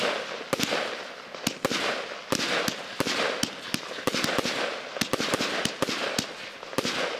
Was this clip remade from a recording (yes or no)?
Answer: no